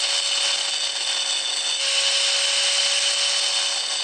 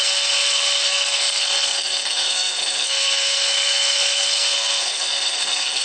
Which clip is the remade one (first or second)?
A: second